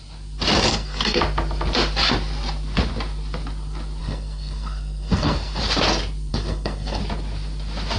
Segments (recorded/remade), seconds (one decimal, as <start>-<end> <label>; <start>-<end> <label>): 0.0-0.7 recorded; 0.7-1.2 remade; 1.2-4.0 recorded; 4.0-5.6 remade; 5.6-6.3 recorded; 6.3-7.0 remade; 7.0-8.0 recorded